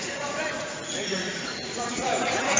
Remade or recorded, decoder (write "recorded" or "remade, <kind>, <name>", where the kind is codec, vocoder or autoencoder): remade, vocoder, Vocos